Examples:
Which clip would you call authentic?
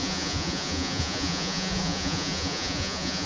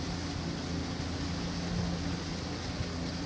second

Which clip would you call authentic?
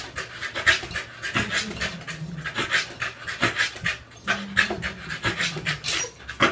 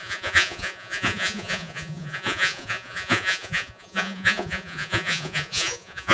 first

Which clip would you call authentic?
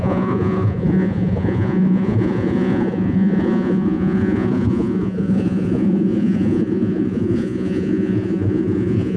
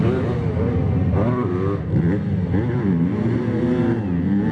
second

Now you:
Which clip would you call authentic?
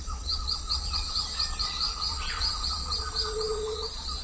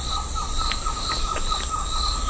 second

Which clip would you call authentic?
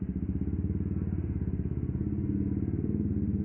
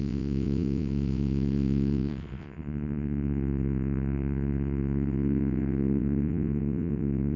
first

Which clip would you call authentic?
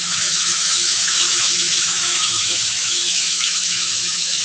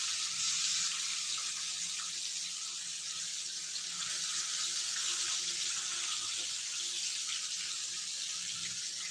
second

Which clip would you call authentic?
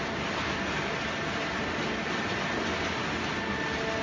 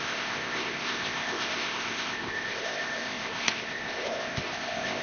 first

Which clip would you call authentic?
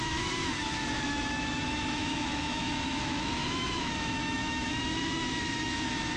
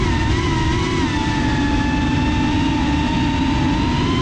second